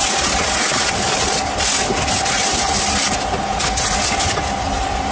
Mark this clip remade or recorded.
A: recorded